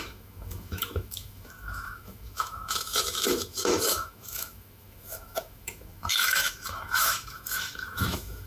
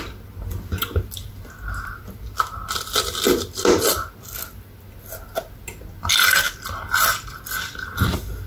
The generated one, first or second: first